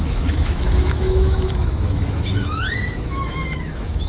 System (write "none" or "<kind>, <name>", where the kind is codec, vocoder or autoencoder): autoencoder, DAC-VAE